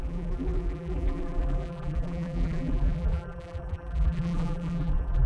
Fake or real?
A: fake